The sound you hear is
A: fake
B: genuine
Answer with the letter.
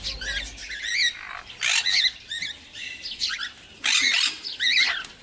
B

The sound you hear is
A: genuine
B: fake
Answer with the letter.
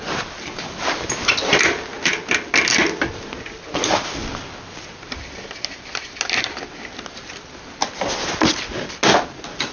A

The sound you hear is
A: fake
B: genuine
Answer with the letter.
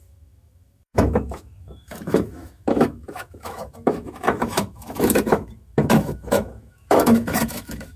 A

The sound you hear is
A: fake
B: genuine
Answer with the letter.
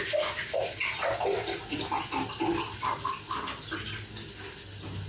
B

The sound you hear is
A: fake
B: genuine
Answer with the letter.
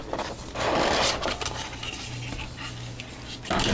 B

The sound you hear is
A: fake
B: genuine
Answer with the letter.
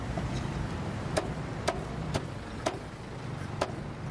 A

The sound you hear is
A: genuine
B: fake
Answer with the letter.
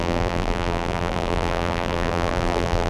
B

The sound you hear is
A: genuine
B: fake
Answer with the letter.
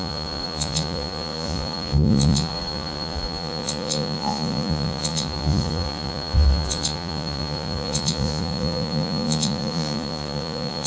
B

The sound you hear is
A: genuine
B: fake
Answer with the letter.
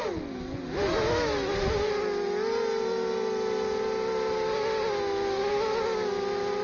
A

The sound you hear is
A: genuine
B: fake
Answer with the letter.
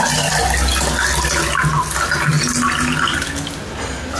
A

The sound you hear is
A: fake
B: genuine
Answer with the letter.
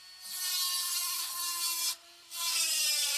B